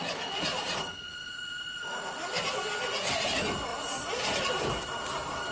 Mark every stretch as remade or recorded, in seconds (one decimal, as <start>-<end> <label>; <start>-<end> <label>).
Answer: 0.0-0.5 recorded; 0.5-2.1 remade; 2.1-5.5 recorded